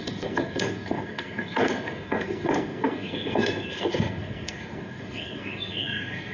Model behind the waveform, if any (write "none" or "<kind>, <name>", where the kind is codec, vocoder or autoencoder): codec, SNAC